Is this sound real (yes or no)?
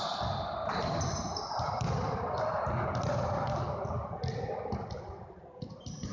yes